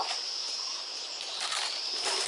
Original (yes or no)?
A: yes